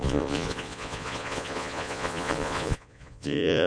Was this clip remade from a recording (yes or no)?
yes